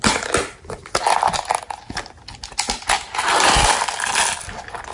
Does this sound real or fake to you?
real